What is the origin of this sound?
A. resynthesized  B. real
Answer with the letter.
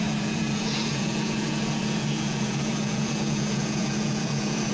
A